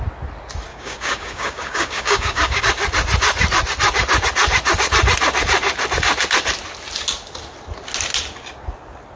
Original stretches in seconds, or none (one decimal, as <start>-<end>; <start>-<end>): 0.0-0.7; 2.6-9.2